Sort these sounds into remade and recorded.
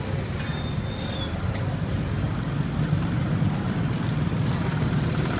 recorded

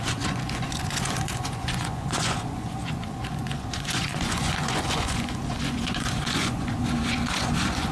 remade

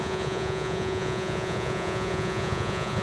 remade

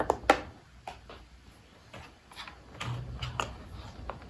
recorded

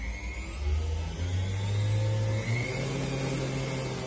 recorded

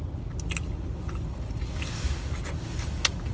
recorded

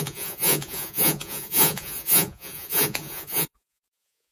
remade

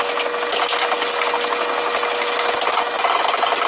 recorded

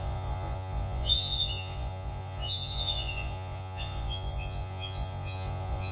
remade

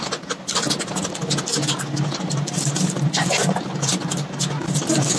recorded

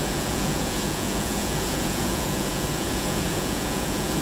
remade